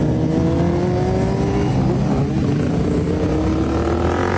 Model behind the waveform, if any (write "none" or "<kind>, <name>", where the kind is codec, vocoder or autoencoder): none